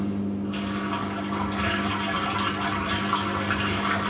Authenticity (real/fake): real